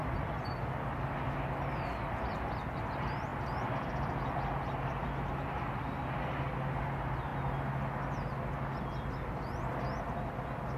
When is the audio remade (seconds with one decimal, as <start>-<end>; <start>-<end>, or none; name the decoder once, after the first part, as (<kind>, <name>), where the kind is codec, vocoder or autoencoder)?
none